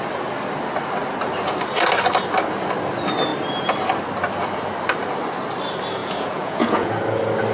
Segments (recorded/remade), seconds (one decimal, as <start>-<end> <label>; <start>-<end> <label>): 0.0-6.0 recorded; 6.0-6.9 remade; 6.9-7.5 recorded